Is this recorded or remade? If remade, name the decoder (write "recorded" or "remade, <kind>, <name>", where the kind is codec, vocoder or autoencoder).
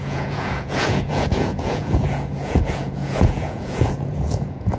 remade, vocoder, Vocos